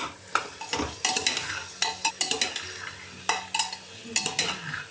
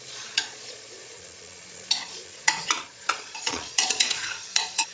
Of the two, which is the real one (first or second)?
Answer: first